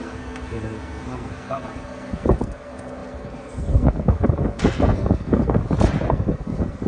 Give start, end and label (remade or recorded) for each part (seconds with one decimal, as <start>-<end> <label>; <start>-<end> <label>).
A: 0.0-5.6 remade; 5.6-6.1 recorded; 6.1-6.9 remade